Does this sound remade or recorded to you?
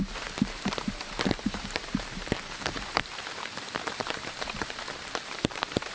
remade